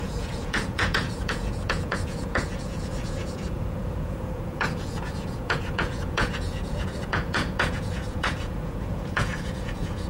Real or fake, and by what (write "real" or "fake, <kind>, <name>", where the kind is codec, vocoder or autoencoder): fake, vocoder, Vocos